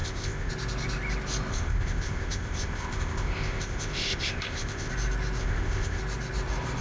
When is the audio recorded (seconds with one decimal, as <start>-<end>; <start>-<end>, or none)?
0.5-1.5; 4.9-5.4; 6.0-6.8